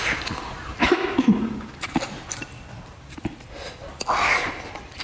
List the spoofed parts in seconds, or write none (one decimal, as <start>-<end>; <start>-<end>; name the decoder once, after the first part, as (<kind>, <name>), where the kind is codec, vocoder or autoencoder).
0.8-1.3 (autoencoder, DAC-VAE)